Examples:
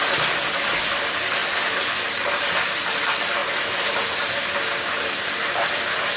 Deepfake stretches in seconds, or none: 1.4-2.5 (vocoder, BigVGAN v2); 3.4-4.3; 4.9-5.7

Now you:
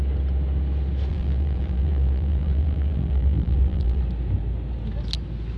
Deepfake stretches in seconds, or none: 1.1-4.0 (vocoder, BigVGAN v2)

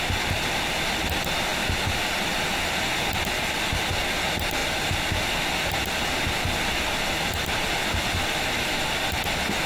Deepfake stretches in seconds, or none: none

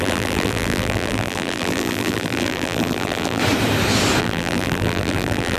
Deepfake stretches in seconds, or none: 0.0-3.4 (vocoder, BigVGAN v2); 4.2-5.6